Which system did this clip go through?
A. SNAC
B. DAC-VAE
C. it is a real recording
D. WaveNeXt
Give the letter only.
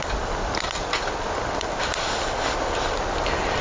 C